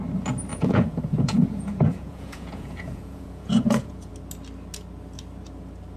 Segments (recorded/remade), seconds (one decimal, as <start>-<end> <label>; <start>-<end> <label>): 0.0-0.5 recorded; 0.5-4.1 remade; 4.1-6.0 recorded

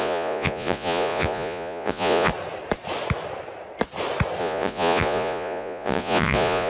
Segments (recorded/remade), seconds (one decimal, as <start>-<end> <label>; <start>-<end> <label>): 0.0-2.3 remade; 2.3-4.4 recorded; 4.4-6.7 remade

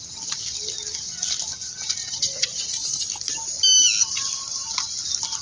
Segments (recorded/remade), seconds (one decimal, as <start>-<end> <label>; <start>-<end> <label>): 0.0-2.0 recorded; 2.0-3.0 remade; 3.0-5.4 recorded